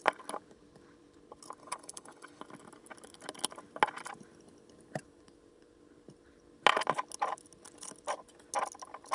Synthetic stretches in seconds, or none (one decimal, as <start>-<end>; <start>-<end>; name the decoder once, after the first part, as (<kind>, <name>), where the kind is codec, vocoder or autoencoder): 1.6-2.4 (codec, HILCodec)